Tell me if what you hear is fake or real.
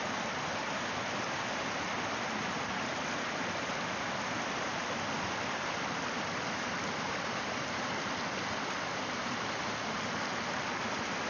real